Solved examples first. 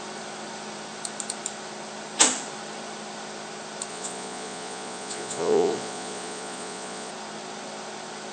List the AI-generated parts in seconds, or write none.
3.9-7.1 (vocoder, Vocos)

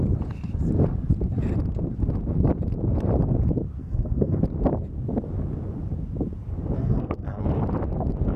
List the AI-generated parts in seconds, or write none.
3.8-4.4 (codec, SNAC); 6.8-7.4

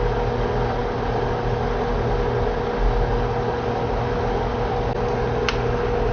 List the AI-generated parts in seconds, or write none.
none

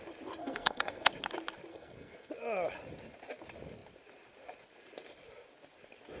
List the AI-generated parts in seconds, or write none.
0.4-1.1 (codec, SNAC); 1.7-2.3

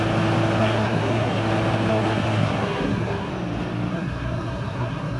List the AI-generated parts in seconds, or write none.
0.6-1.4 (codec, SNAC); 1.9-3.3; 3.9-5.2